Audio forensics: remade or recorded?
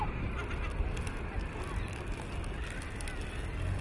recorded